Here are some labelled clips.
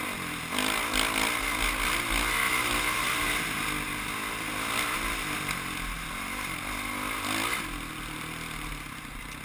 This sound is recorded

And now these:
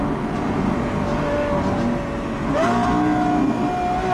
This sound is recorded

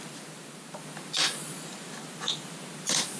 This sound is recorded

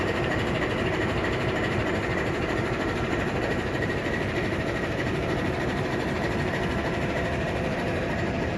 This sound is remade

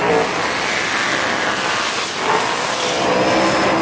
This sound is recorded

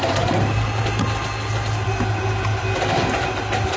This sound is recorded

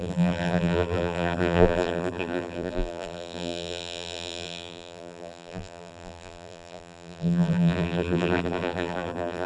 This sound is remade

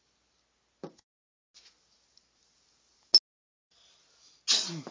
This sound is recorded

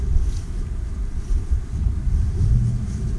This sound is remade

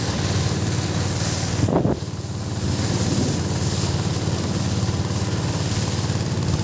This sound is recorded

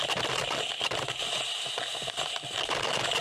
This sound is recorded